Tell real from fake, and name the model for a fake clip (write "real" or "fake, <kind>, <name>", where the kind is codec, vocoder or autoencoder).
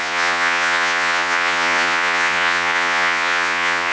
fake, vocoder, Vocos